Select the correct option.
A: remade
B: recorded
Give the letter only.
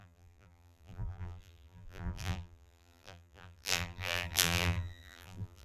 A